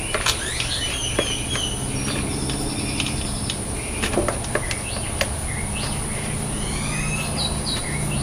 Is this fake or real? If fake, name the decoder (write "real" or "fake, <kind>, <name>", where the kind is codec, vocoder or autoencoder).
real